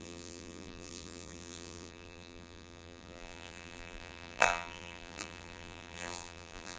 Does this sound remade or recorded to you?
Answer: remade